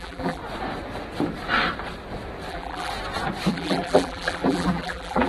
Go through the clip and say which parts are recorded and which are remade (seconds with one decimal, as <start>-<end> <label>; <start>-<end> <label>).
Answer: 0.0-0.4 remade; 0.4-2.5 recorded; 2.5-2.9 remade; 2.9-3.5 recorded; 3.5-5.3 remade